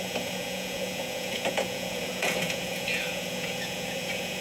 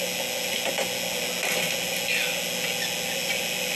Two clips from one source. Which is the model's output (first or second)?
first